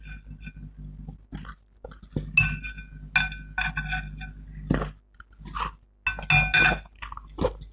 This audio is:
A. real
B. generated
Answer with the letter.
A